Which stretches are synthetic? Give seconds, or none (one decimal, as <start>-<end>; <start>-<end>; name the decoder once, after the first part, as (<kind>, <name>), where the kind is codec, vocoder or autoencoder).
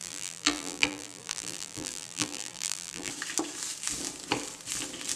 0.0-3.1 (vocoder, BigVGAN v2)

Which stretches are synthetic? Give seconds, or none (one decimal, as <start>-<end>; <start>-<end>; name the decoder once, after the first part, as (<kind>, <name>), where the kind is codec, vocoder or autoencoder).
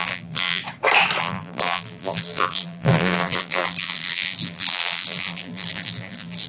0.0-0.6 (vocoder, BigVGAN v2); 1.2-6.5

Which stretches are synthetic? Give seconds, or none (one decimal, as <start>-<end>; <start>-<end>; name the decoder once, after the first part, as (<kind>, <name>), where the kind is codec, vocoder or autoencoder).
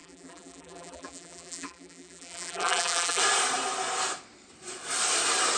0.0-3.2 (vocoder, BigVGAN v2)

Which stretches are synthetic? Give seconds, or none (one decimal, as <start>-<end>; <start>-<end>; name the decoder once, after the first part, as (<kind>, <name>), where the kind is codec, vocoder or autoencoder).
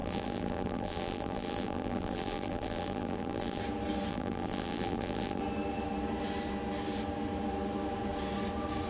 0.0-3.6 (vocoder, BigVGAN v2); 4.1-5.4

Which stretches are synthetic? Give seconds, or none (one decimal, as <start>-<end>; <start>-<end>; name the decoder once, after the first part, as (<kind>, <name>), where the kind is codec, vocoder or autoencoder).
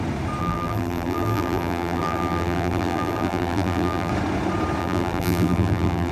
0.4-4.1 (vocoder, BigVGAN v2); 4.8-6.1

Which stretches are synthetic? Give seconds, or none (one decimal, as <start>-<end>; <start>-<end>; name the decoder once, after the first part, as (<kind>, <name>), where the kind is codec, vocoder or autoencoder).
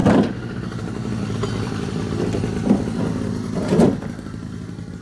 0.0-3.0 (vocoder, BigVGAN v2); 3.7-4.4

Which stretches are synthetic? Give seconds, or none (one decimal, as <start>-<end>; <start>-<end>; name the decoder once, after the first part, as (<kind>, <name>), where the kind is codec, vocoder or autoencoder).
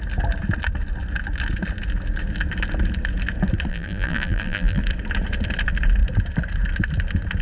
3.7-4.8 (vocoder, BigVGAN v2)